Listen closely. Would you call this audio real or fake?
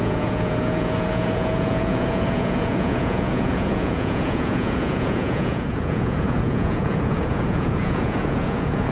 fake